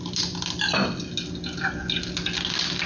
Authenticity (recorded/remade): recorded